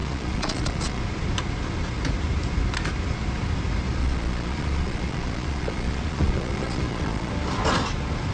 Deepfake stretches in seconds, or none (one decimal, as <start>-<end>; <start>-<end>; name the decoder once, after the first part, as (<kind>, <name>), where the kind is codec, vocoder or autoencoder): 0.0-1.0 (vocoder, Vocos); 4.0-7.3